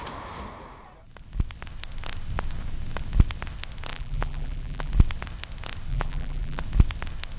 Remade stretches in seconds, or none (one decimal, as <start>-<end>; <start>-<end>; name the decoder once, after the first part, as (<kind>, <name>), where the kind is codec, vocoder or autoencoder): 3.9-4.9 (vocoder, BigVGAN v2); 5.9-6.6